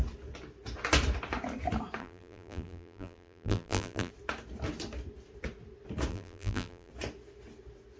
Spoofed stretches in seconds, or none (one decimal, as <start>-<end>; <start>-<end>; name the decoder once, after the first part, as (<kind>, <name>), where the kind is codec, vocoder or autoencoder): 2.0-4.1 (vocoder, BigVGAN v2); 6.1-6.9